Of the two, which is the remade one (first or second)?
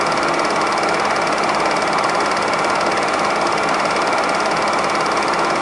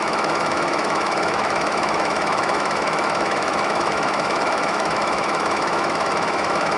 second